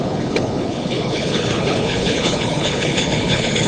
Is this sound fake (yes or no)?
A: yes